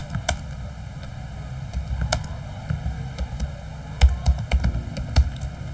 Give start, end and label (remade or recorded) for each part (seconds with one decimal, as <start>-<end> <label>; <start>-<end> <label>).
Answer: 0.0-5.7 recorded